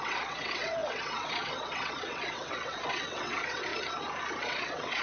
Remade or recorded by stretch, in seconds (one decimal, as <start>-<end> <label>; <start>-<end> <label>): 0.0-3.7 remade; 3.7-4.4 recorded; 4.4-5.0 remade